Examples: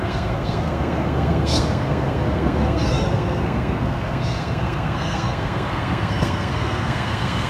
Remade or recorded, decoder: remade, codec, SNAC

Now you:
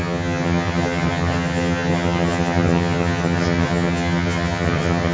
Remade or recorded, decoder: remade, vocoder, HiFi-GAN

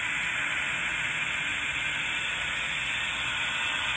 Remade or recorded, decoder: recorded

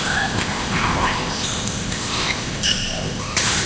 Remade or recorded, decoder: remade, codec, ZipCodec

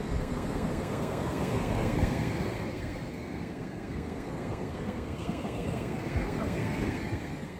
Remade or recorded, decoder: remade, codec, SNAC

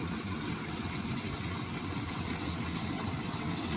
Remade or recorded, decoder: remade, vocoder, WaveNeXt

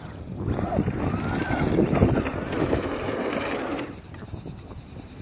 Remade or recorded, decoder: recorded